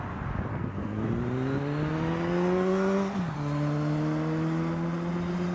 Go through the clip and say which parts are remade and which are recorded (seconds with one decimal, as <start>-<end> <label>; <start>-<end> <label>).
0.0-0.5 recorded; 0.5-1.0 remade; 1.0-5.5 recorded